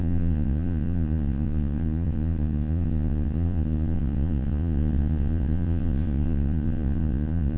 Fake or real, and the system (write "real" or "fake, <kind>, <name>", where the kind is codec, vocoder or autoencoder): fake, vocoder, Vocos